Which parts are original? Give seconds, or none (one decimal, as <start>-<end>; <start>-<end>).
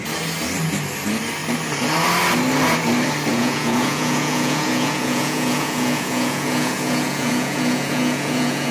0.0-3.3